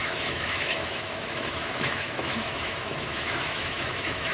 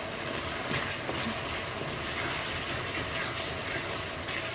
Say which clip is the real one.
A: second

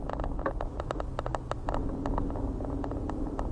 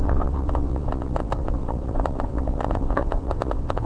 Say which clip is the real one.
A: first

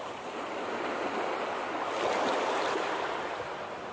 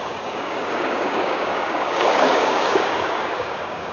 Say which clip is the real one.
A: first